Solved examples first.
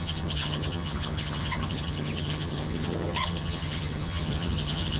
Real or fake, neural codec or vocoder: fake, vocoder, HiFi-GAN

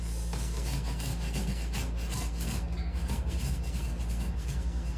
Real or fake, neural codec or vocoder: fake, codec, SNAC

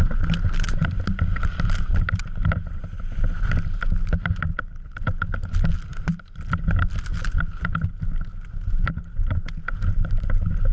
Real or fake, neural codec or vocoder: real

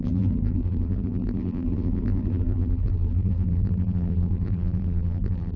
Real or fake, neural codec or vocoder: fake, vocoder, BigVGAN v2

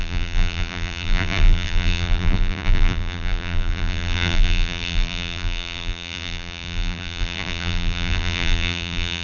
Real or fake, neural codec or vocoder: fake, vocoder, BigVGAN v2